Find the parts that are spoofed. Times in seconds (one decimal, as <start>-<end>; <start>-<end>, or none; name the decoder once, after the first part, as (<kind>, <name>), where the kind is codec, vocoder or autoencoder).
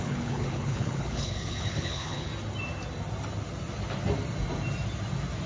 0.0-2.3 (codec, HILCodec)